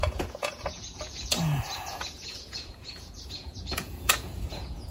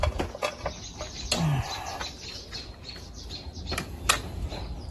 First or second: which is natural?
second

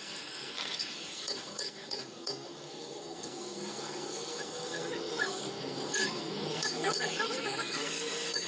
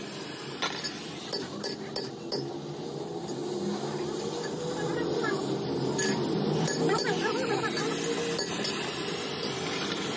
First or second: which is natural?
second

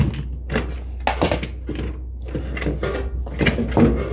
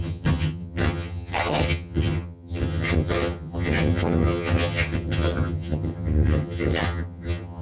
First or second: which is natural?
first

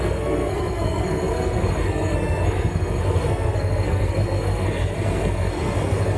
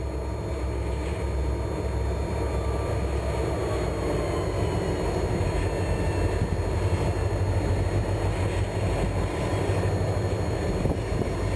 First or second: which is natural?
second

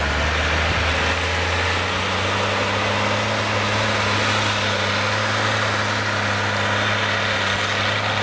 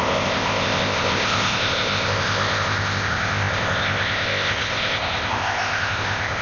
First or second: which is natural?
first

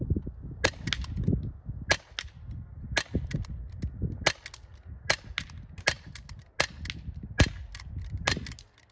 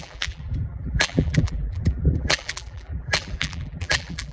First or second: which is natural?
first